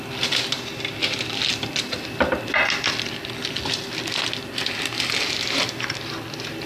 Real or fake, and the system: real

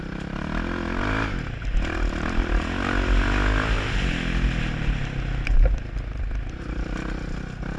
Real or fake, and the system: real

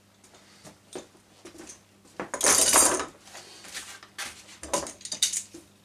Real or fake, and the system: real